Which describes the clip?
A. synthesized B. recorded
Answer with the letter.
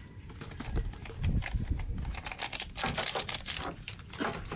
B